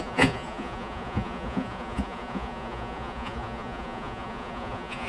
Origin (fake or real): fake